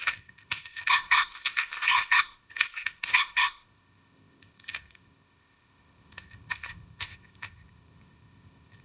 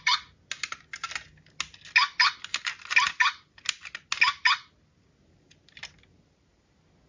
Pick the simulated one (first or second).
first